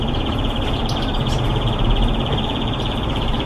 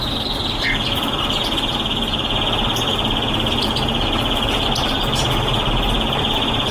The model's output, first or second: first